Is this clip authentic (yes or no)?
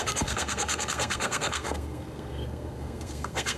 no